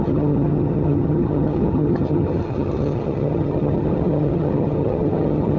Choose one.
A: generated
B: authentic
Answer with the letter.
A